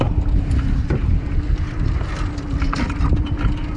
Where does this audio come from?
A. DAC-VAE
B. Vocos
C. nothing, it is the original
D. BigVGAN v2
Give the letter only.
C